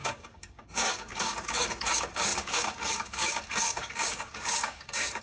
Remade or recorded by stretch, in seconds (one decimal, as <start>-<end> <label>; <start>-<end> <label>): 0.0-5.2 remade